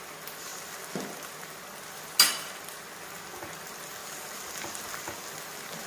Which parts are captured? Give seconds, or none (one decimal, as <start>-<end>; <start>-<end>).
0.0-5.9

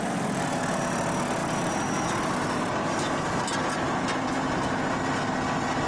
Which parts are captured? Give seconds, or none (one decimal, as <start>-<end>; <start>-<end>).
0.0-5.9

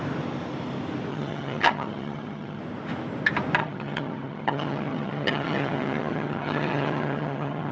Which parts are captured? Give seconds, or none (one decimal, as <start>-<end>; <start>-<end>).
0.0-1.1; 2.6-3.6